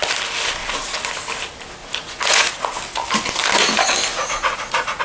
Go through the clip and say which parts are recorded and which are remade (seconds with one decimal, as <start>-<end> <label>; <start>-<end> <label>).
0.0-0.6 recorded; 0.6-1.1 remade; 1.1-1.8 recorded; 1.8-2.8 remade; 2.8-4.1 recorded; 4.1-5.0 remade